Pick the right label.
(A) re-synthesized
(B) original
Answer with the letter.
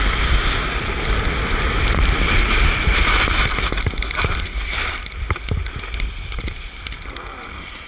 A